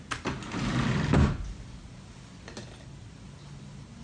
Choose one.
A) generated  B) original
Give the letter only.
B